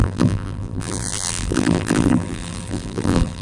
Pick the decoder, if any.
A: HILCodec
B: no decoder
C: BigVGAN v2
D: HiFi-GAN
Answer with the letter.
C